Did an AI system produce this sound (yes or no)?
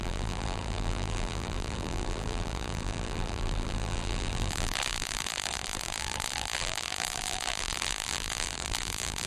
yes